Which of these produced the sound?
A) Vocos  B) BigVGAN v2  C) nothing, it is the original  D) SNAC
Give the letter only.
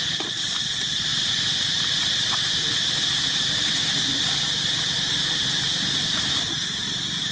B